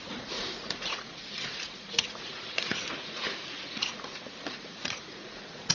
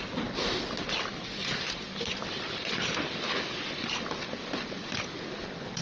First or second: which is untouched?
second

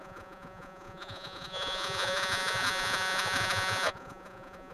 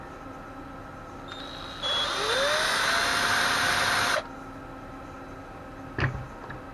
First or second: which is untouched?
second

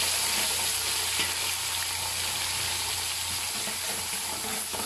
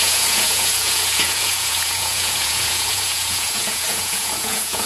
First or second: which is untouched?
first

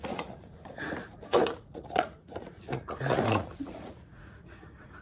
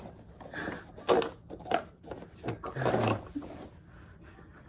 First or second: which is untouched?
second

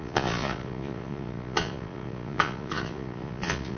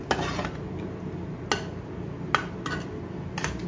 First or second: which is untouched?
second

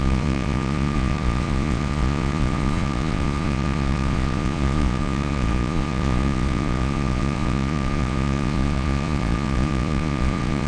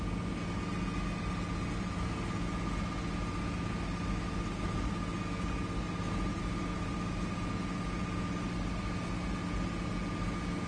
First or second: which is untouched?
second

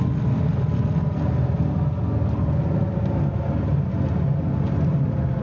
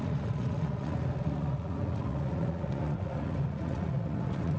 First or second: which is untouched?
first